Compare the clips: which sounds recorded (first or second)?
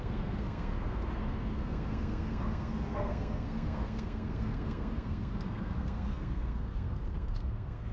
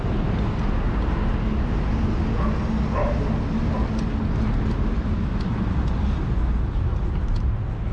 second